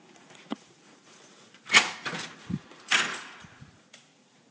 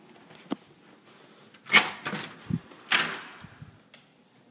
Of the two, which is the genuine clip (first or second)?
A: second